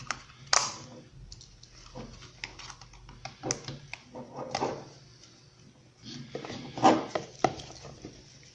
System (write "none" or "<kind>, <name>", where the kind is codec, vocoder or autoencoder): none